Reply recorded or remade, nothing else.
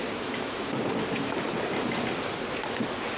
recorded